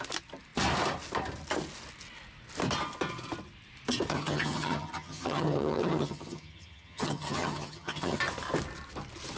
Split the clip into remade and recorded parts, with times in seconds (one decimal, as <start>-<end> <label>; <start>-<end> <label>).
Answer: 0.0-4.1 recorded; 4.1-8.2 remade; 8.2-9.4 recorded